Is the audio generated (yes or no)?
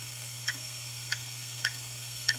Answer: yes